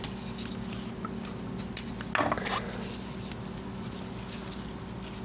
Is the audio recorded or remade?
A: recorded